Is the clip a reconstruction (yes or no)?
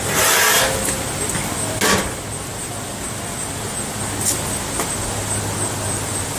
no